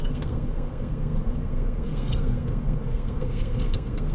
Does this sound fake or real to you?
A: fake